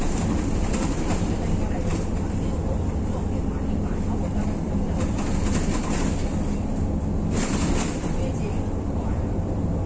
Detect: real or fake fake